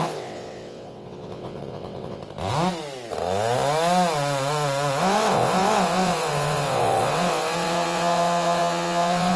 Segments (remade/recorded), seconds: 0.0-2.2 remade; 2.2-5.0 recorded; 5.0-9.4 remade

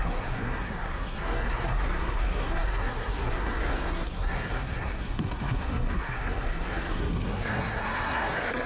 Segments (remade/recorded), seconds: 0.0-8.7 remade

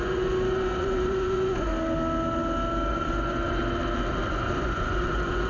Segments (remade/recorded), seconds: 0.0-1.7 remade; 1.7-2.9 recorded; 2.9-3.6 remade; 3.6-4.3 recorded; 4.3-5.5 remade

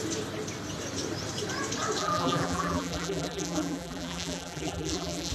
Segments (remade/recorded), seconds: 0.0-2.0 recorded; 2.0-5.3 remade

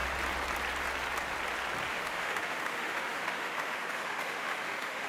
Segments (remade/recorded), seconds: 0.0-1.9 recorded; 1.9-5.1 remade

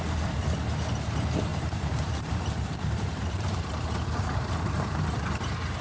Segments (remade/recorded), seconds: 0.0-1.5 recorded; 1.5-5.0 remade; 5.0-5.8 recorded

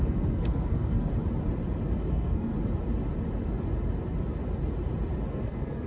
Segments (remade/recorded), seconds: 0.0-1.1 remade; 1.1-2.1 recorded; 2.1-2.5 remade; 2.5-5.3 recorded; 5.3-5.9 remade